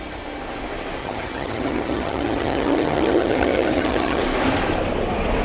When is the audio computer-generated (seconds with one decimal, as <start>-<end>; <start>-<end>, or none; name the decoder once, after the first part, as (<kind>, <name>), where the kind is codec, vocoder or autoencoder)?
1.0-4.2 (vocoder, HiFi-GAN)